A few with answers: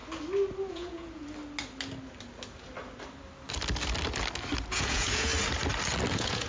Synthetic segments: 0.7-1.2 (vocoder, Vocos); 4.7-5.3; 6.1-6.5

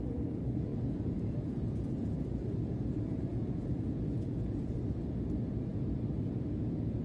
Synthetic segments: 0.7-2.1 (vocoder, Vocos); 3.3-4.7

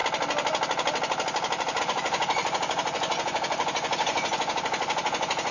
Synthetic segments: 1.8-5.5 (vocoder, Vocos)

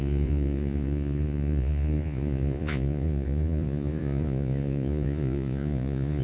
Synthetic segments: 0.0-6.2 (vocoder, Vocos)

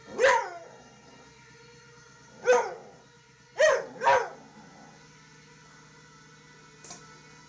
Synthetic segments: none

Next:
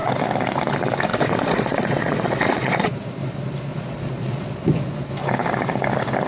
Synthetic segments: 1.1-2.9 (vocoder, Vocos); 3.7-4.5

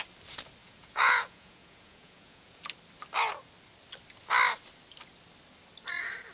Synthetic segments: 0.6-2.6 (vocoder, Vocos)